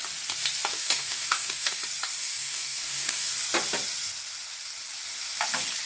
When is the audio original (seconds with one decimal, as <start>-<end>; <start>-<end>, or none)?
0.0-0.7; 1.8-2.2; 3.3-5.9